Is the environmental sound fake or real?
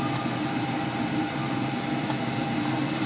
real